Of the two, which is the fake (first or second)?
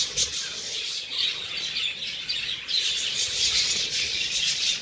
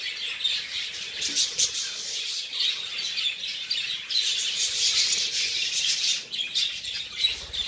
first